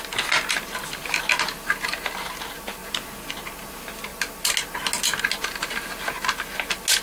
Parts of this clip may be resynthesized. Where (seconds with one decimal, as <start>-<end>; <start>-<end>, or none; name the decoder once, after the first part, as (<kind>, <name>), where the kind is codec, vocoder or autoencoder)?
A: none